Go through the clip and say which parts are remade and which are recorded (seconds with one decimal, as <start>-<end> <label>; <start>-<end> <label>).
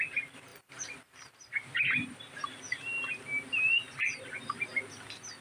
0.0-5.4 recorded